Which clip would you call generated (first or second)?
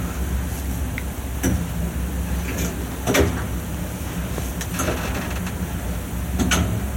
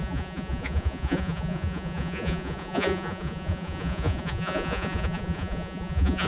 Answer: second